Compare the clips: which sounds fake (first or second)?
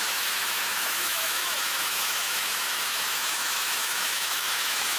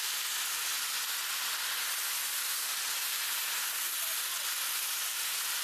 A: first